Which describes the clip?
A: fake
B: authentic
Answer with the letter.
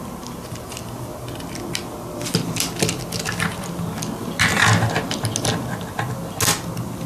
B